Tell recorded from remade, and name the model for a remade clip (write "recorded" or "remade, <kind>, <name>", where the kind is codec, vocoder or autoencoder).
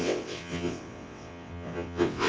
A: remade, vocoder, WaveNeXt